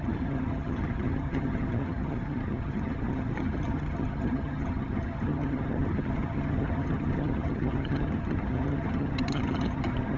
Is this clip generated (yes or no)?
yes